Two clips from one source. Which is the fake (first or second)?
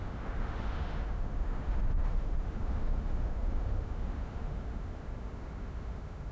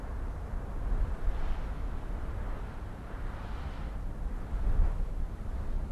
first